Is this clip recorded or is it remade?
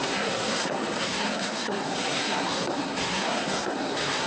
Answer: remade